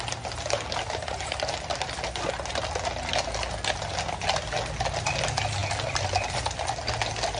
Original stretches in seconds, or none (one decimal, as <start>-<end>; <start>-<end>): 0.0-7.4